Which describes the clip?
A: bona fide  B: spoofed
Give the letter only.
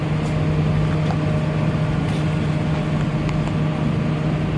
A